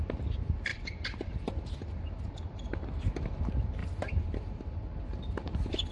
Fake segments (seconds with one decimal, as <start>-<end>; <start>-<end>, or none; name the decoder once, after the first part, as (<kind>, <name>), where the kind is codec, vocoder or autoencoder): 0.0-5.9 (vocoder, BigVGAN v2)